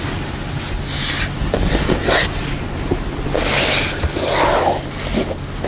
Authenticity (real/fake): real